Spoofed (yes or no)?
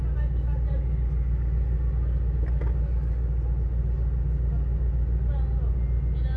no